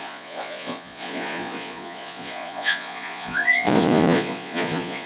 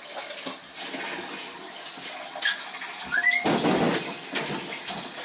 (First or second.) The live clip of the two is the second